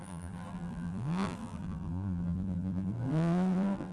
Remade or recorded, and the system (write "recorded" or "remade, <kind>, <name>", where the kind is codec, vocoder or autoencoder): remade, vocoder, BigVGAN v2